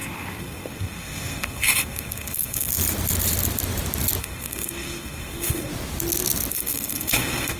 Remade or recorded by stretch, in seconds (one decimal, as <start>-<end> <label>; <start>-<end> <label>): 0.0-2.7 remade; 2.7-4.2 recorded; 4.2-5.7 remade; 5.7-6.5 recorded; 6.5-7.6 remade